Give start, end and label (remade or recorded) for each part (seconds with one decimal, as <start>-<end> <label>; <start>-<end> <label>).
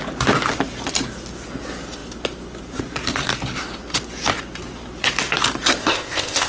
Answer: 0.0-5.8 recorded; 5.8-6.5 remade